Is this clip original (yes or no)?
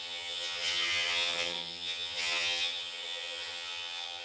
no